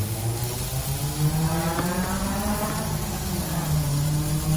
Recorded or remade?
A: recorded